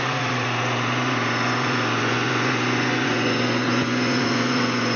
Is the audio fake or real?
fake